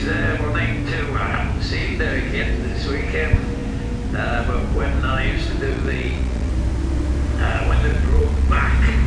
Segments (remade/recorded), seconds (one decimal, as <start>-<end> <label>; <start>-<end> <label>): 0.0-5.7 recorded; 5.7-6.5 remade; 6.5-7.9 recorded; 7.9-8.5 remade; 8.5-9.1 recorded